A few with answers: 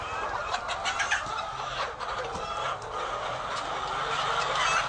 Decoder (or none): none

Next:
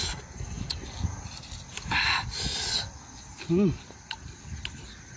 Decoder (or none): none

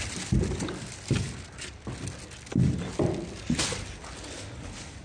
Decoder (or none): none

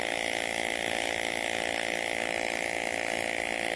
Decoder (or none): none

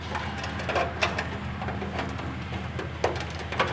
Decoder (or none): none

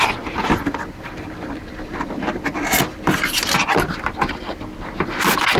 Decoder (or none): none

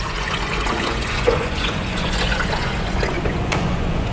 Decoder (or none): vocoder, Vocos